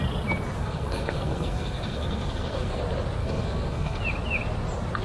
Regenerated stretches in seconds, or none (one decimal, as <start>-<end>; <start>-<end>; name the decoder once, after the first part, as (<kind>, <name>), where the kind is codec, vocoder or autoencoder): 0.6-2.8 (codec, SNAC); 3.2-4.0